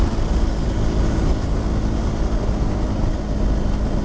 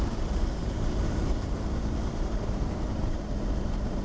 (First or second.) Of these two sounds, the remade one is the second